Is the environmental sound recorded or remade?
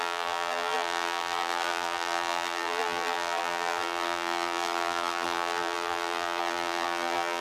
remade